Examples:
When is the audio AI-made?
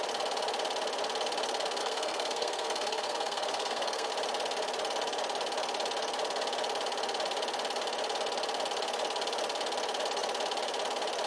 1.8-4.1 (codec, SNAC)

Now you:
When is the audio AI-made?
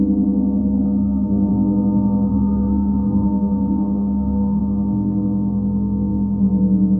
0.6-1.5 (codec, SNAC); 2.3-4.6